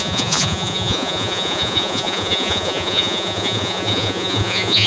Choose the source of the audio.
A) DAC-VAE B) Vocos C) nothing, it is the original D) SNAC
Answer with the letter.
B